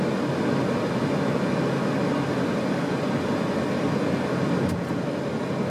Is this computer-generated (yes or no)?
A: no